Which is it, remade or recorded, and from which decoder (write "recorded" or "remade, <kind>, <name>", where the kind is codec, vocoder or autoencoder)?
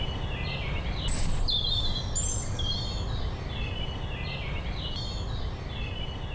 recorded